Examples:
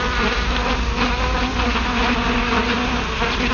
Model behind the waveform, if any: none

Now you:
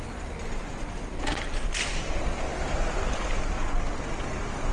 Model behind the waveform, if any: none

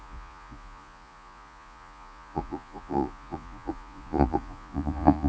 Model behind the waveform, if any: vocoder, Vocos